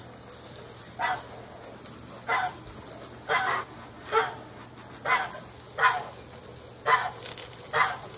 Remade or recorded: recorded